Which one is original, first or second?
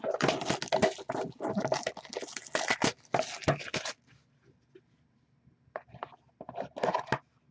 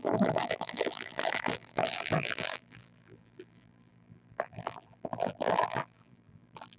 first